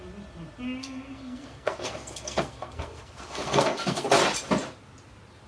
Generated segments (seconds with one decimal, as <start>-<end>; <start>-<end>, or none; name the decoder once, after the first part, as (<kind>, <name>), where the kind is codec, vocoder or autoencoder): 0.8-4.1 (codec, SNAC)